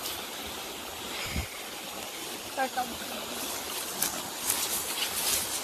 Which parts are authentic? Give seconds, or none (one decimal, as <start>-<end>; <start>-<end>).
0.0-5.6